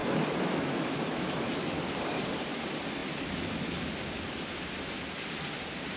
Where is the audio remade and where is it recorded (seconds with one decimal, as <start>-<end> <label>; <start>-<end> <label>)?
0.0-1.8 remade; 1.8-6.0 recorded